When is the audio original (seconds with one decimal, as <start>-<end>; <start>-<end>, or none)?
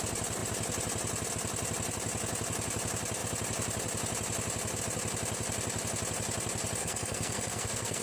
0.0-6.8